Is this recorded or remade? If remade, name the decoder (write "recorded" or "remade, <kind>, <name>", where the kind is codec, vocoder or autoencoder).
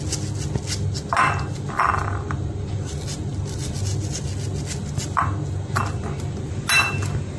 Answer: recorded